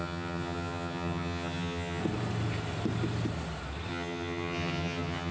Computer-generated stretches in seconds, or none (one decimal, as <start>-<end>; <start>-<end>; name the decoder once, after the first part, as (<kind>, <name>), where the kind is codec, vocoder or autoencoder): 0.0-2.0 (vocoder, HiFi-GAN); 3.9-5.3